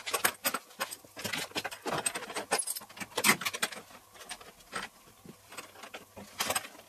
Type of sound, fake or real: real